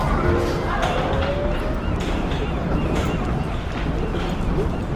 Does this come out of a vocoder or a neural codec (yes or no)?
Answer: no